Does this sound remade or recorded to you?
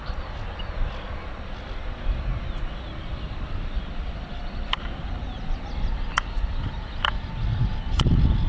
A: recorded